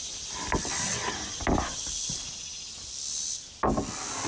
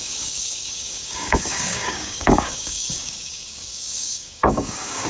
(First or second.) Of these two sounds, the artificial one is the second